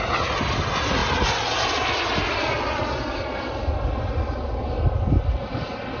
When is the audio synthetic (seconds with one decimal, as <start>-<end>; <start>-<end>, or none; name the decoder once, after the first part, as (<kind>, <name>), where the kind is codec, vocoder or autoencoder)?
none